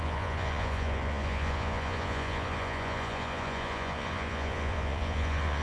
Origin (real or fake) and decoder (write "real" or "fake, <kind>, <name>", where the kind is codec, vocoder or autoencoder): fake, vocoder, Vocos